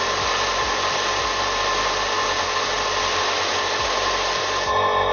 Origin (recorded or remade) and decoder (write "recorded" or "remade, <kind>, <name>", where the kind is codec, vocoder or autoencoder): recorded